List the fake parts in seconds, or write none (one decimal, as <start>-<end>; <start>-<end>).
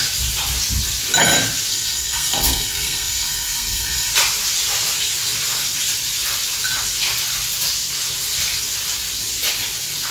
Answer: 1.7-4.1